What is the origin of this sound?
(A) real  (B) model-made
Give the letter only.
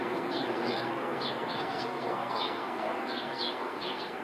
B